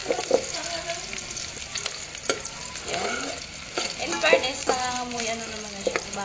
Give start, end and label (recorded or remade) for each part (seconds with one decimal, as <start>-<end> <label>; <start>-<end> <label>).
0.0-4.6 recorded; 4.6-5.2 remade; 5.2-6.2 recorded